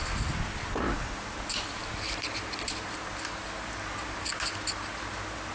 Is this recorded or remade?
recorded